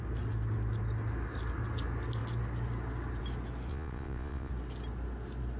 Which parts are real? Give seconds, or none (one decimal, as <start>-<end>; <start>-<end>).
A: 0.0-3.7; 4.5-5.6